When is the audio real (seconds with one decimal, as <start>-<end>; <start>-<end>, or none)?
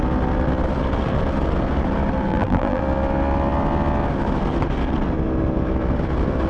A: 0.0-2.3; 2.8-6.5